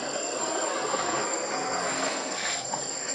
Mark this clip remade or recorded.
remade